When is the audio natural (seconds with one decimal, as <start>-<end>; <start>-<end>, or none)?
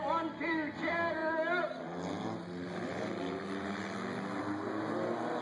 0.0-5.4